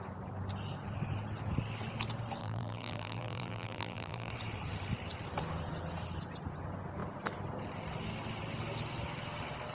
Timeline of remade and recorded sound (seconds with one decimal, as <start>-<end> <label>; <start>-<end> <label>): 0.0-2.4 recorded; 2.4-4.3 remade; 4.3-9.7 recorded